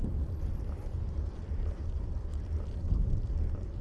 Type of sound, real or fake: fake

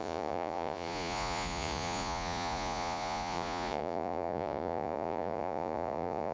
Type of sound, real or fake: fake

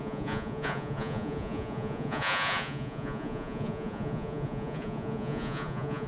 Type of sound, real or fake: fake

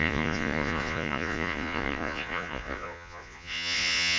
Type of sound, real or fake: fake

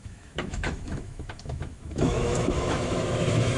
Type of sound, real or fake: fake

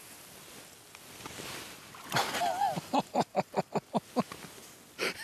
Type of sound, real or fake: real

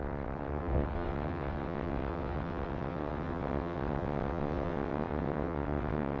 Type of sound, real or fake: fake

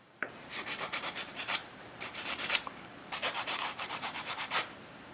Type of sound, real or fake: fake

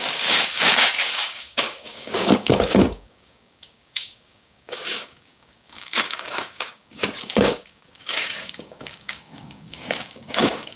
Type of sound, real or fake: fake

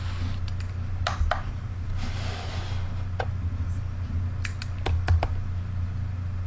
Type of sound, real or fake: real